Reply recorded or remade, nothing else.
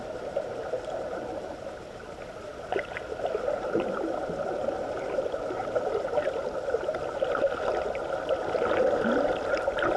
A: recorded